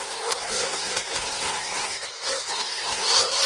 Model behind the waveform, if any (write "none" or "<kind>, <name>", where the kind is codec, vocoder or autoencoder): codec, SNAC